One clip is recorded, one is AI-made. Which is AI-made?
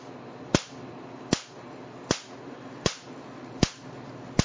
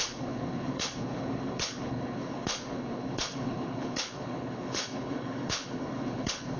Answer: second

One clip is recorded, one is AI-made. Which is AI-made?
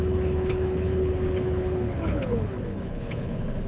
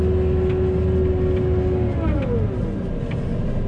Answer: first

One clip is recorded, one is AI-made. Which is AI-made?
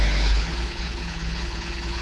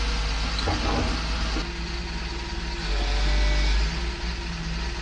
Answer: first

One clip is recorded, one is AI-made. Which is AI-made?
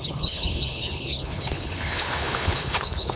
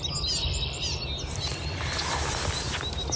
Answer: first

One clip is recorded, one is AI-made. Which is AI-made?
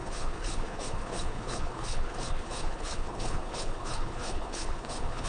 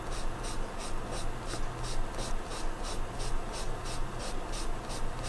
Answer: first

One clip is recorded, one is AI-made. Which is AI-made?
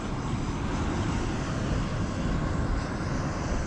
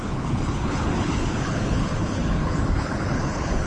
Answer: second